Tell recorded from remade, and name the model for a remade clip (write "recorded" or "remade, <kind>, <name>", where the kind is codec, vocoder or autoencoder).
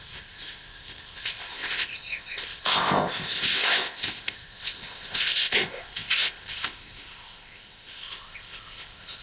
remade, codec, ZipCodec